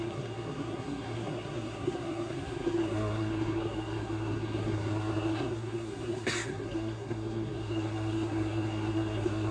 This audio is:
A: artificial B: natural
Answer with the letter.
A